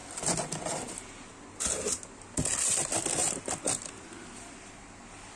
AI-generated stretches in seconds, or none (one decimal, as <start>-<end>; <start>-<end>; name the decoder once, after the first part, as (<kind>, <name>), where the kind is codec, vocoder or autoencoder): none